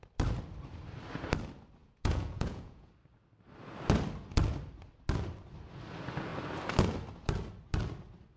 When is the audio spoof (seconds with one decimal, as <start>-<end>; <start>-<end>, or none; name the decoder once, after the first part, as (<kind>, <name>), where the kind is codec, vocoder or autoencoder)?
1.8-2.9 (vocoder, Vocos)